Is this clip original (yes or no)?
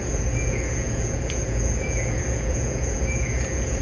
no